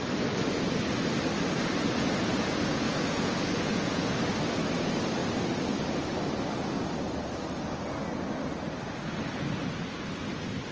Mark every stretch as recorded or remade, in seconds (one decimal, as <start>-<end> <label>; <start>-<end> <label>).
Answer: 0.0-2.3 recorded; 2.3-4.2 remade; 4.2-10.7 recorded